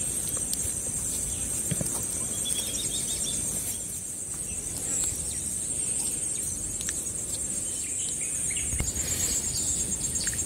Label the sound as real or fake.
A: real